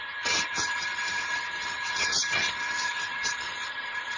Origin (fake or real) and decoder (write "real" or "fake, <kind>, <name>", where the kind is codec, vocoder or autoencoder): fake, vocoder, HiFi-GAN